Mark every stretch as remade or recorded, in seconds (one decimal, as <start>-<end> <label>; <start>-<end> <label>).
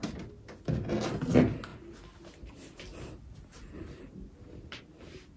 0.0-5.4 recorded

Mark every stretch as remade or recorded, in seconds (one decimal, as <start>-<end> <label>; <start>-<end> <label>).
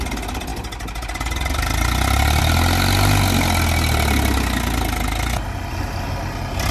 0.0-6.7 recorded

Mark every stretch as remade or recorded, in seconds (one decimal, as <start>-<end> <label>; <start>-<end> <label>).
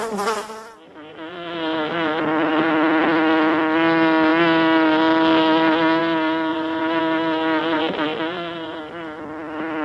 0.0-1.1 recorded; 1.1-2.7 remade; 2.7-6.5 recorded; 6.5-7.0 remade; 7.0-7.6 recorded; 7.6-8.8 remade; 8.8-9.8 recorded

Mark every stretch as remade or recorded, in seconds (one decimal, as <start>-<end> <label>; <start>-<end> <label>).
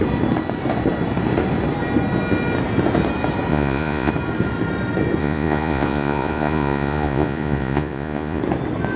0.0-3.5 recorded; 3.5-4.1 remade; 4.1-5.2 recorded; 5.2-8.4 remade; 8.4-9.0 recorded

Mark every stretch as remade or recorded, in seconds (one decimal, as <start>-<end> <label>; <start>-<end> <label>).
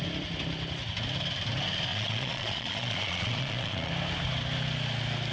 0.0-1.9 recorded; 1.9-3.9 remade; 3.9-5.3 recorded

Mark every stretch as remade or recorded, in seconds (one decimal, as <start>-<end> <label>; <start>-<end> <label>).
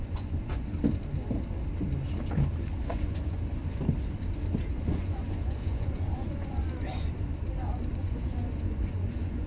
0.0-0.7 remade; 0.7-2.8 recorded; 2.8-3.6 remade; 3.6-4.7 recorded; 4.7-7.3 remade; 7.3-7.9 recorded; 7.9-9.5 remade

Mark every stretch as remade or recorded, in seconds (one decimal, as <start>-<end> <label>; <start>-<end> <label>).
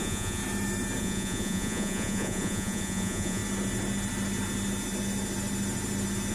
0.0-0.4 remade; 0.4-1.0 recorded; 1.0-3.4 remade; 3.4-6.3 recorded